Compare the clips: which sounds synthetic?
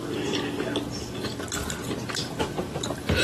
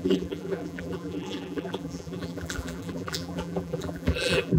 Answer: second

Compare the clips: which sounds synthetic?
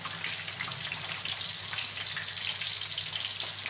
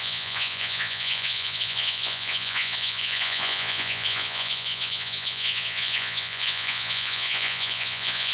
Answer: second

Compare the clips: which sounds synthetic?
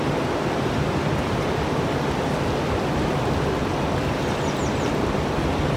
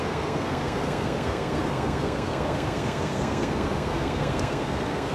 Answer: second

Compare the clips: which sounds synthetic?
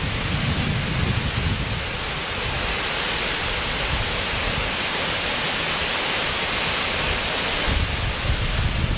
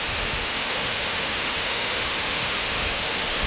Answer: second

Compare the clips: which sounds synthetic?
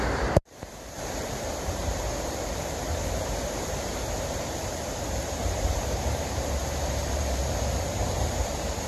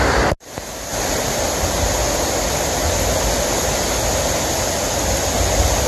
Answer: first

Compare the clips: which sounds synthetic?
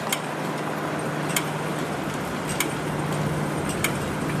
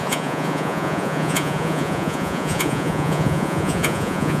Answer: second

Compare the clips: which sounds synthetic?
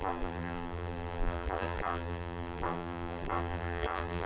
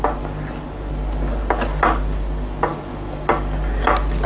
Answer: first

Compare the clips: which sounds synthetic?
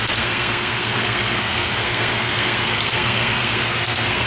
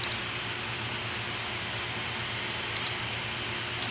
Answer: first